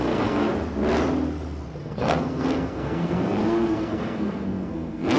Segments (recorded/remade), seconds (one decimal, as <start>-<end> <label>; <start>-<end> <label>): 0.0-0.5 remade; 0.5-1.8 recorded; 1.8-5.2 remade

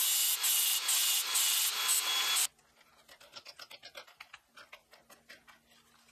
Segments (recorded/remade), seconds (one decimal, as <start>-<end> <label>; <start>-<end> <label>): 0.0-1.0 recorded; 1.0-2.5 remade; 2.5-6.1 recorded